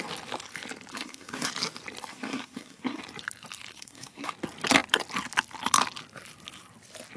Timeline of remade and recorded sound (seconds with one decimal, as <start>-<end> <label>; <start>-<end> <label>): 0.0-0.9 recorded; 0.9-1.5 remade; 1.5-2.1 recorded; 2.1-3.0 remade; 3.0-3.7 recorded; 3.7-4.3 remade; 4.3-7.2 recorded